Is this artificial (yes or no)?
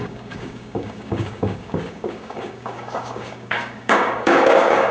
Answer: yes